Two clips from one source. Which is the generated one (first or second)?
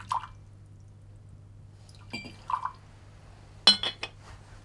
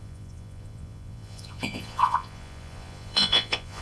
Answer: second